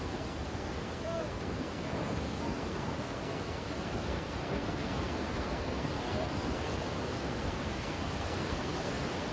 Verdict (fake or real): fake